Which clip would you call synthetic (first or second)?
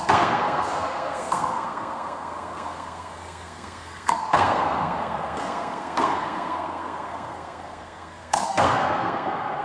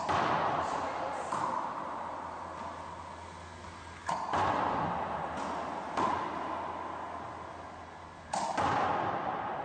first